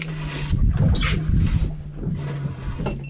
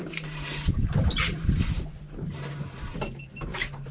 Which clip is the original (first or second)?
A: first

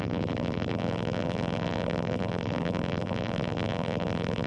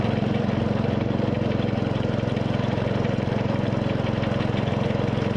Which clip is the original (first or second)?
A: second